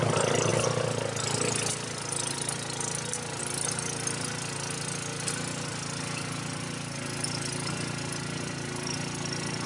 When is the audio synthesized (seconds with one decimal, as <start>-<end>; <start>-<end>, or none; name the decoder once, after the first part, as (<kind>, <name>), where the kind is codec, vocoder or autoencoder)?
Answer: none